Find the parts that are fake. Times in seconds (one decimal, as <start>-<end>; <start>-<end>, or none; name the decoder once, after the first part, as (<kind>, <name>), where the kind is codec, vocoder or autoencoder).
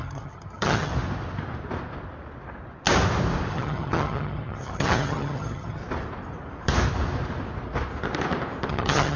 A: 0.0-0.9 (vocoder, HiFi-GAN); 3.5-5.8; 8.7-9.2